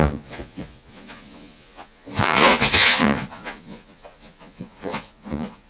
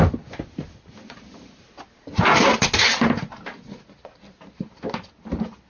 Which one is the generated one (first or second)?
first